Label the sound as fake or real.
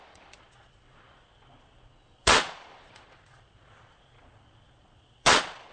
fake